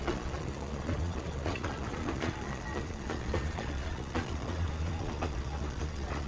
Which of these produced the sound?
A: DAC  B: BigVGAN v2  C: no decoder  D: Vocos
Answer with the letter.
D